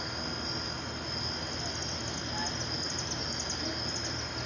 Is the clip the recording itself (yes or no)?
yes